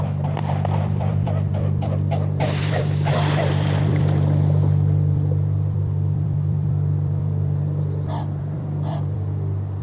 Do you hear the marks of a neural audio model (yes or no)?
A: yes